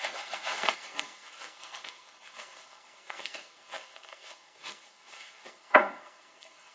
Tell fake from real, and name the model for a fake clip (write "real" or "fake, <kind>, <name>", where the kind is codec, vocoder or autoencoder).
fake, codec, SNAC